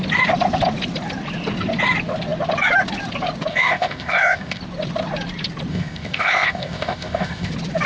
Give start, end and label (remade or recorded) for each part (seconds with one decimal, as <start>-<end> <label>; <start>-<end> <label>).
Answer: 0.0-3.5 recorded; 3.5-4.6 remade; 4.6-5.7 recorded; 5.7-7.5 remade; 7.5-7.9 recorded